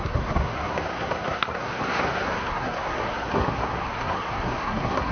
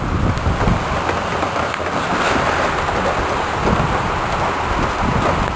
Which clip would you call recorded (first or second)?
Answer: second